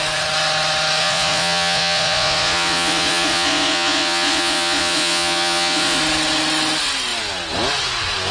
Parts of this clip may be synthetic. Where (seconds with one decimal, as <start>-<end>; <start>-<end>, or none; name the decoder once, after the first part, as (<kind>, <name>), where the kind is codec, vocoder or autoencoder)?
1.0-6.0 (vocoder, Vocos)